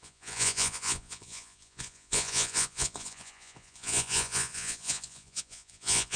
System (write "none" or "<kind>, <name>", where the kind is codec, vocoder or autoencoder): vocoder, Vocos